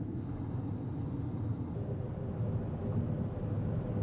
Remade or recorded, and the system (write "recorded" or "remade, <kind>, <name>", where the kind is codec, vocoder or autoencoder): recorded